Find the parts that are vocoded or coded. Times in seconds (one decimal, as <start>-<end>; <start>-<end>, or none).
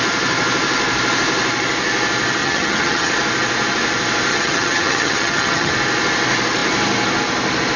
2.4-3.1; 4.3-5.7